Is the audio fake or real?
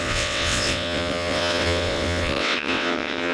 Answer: fake